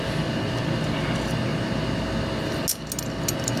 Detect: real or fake real